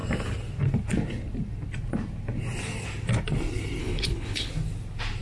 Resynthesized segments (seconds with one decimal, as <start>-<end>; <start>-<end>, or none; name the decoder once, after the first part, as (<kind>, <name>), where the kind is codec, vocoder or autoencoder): 3.8-4.5 (codec, HILCodec)